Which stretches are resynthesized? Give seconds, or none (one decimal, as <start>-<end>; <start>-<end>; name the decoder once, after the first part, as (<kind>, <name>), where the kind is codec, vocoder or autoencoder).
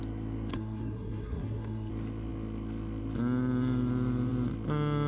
0.5-1.9 (codec, SNAC)